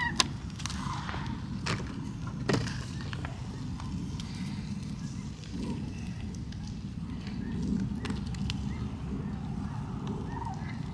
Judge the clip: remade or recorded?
recorded